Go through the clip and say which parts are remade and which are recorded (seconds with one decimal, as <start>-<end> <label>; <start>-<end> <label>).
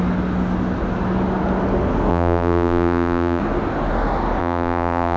0.0-2.1 recorded; 2.1-3.4 remade; 3.4-4.4 recorded; 4.4-5.2 remade